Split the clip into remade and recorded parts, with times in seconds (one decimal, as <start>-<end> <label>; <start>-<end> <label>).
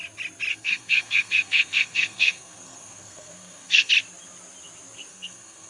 0.0-0.5 recorded; 0.5-3.9 remade; 3.9-5.1 recorded; 5.1-5.7 remade